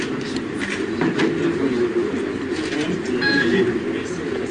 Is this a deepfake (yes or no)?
no